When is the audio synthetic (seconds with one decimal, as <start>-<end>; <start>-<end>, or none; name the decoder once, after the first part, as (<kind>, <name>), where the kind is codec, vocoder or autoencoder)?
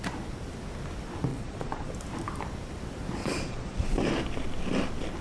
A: 1.3-1.9 (vocoder, Vocos); 3.2-3.9